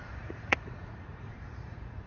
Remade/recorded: remade